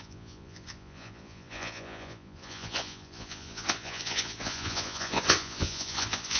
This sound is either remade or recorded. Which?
remade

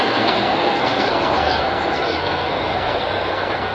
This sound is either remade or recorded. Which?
remade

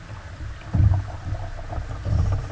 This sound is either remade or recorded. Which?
recorded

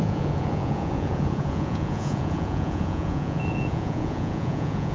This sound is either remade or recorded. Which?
remade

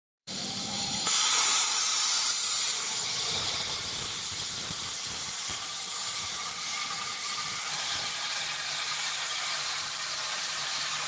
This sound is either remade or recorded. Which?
remade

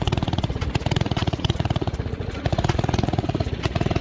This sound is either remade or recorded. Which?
remade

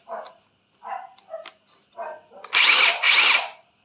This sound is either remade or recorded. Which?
recorded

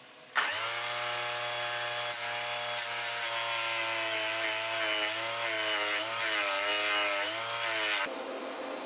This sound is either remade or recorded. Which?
recorded